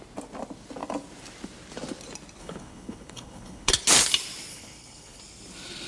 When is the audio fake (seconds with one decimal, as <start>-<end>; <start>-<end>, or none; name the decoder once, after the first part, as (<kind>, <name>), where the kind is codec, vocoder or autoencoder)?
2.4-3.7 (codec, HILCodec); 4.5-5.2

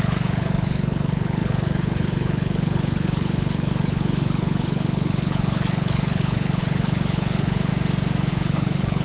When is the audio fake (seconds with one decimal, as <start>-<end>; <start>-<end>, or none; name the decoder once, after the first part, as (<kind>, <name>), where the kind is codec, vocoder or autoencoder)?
0.0-7.7 (codec, HILCodec); 8.3-9.0

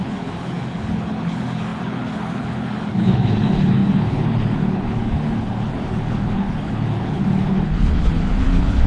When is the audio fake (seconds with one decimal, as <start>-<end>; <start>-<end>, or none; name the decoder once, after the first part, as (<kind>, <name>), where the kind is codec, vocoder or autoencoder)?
0.0-8.9 (codec, HILCodec)

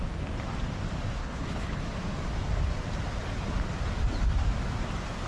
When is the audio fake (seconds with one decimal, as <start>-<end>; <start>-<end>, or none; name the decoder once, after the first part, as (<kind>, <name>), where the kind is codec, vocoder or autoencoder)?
1.2-1.8 (codec, HILCodec)

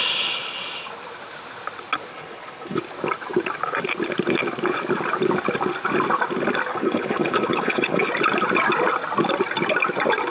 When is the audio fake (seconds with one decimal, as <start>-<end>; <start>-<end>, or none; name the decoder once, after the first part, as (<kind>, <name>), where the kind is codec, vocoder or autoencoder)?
2.1-2.8 (codec, HILCodec); 6.7-8.1

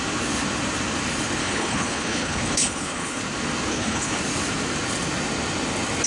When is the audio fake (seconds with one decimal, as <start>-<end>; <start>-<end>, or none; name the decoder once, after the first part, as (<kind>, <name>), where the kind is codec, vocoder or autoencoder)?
1.4-3.2 (codec, HILCodec); 3.7-4.2